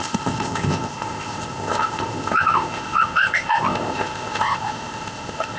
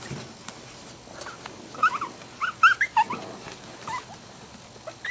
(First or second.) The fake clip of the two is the first